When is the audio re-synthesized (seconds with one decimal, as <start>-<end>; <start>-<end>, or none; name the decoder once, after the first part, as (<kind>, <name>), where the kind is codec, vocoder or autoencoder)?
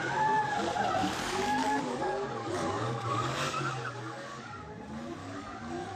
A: 1.0-4.6 (codec, DAC); 5.2-6.0